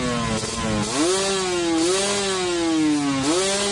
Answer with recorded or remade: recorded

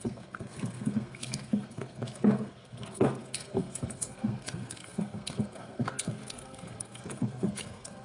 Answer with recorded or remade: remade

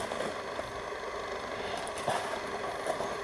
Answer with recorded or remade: recorded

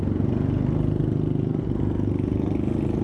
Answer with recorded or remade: recorded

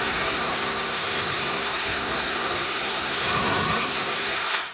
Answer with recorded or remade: remade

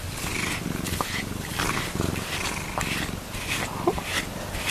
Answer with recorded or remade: recorded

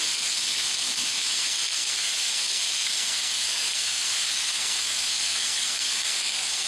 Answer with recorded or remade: remade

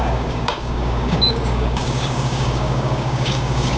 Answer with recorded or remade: remade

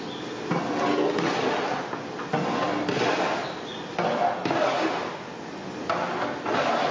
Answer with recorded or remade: recorded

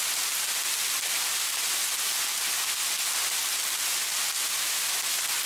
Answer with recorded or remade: recorded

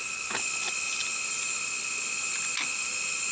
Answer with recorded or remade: recorded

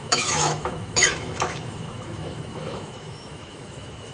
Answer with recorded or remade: remade